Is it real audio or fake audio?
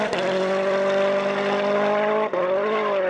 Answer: real